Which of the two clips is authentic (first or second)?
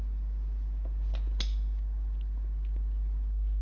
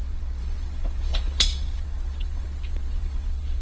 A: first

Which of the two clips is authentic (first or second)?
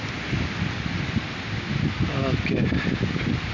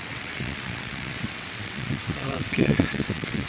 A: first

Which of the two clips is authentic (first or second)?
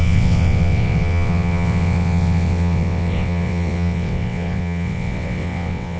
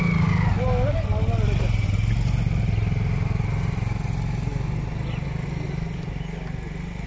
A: second